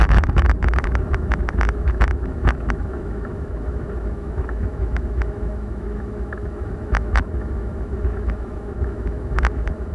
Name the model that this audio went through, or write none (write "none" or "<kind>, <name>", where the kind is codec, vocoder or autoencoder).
autoencoder, DAC-VAE